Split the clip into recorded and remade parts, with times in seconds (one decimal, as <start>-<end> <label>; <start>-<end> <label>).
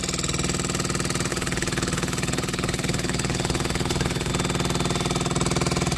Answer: 0.0-1.3 recorded; 1.3-4.3 remade; 4.3-6.0 recorded